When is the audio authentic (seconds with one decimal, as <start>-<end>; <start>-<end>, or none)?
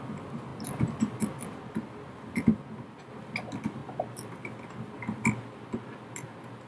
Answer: 0.0-6.7